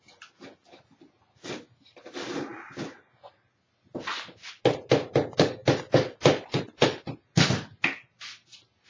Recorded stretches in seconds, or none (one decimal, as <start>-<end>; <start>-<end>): 0.0-8.9